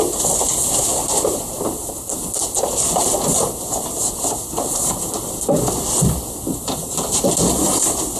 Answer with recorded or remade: remade